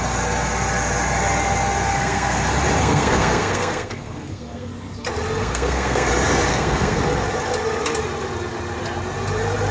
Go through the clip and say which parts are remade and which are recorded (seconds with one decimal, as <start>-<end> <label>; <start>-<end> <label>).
0.0-1.9 recorded; 1.9-2.4 remade; 2.4-2.8 recorded; 2.8-4.7 remade; 4.7-5.4 recorded; 5.4-6.1 remade; 6.1-6.5 recorded; 6.5-7.0 remade; 7.0-9.7 recorded